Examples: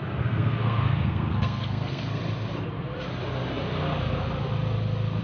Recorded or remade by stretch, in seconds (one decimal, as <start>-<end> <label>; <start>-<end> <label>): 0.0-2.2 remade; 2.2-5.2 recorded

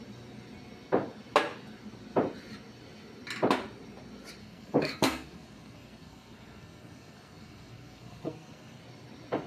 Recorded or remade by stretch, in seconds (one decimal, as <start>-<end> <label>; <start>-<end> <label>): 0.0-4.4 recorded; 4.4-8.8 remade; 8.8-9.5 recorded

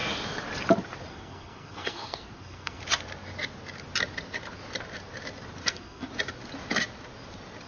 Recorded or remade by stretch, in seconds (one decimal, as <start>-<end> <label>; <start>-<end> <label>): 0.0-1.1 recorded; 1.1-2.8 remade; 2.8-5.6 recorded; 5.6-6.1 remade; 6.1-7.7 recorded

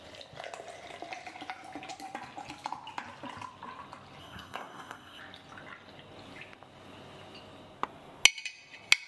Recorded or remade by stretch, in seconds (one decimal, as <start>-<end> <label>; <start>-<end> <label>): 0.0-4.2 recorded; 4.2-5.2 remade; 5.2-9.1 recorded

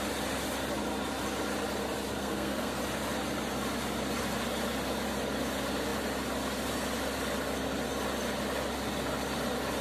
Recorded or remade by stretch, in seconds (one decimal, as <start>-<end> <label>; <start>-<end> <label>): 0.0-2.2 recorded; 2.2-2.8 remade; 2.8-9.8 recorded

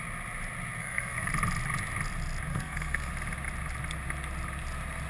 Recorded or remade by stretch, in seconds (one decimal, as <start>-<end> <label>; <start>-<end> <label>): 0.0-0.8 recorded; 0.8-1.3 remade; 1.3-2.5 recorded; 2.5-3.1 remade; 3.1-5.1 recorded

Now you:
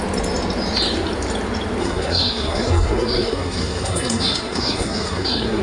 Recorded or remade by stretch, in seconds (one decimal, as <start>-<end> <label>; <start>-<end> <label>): 0.0-1.8 recorded; 1.8-5.6 remade